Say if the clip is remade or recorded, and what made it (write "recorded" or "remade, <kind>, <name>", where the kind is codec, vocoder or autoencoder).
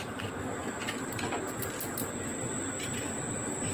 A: recorded